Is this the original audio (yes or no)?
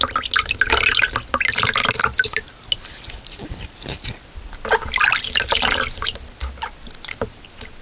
yes